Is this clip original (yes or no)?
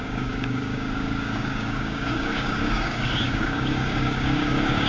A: no